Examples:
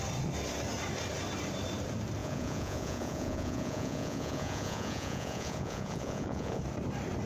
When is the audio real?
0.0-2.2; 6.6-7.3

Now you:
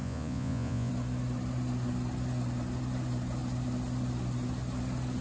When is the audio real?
0.9-5.2

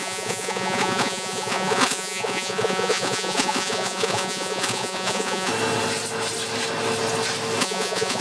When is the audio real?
5.5-7.6

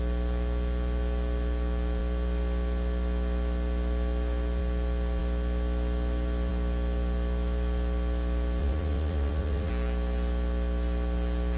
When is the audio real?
0.0-8.6; 9.7-11.6